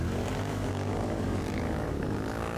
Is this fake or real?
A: fake